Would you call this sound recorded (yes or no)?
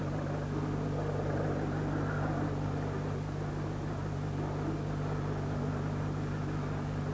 yes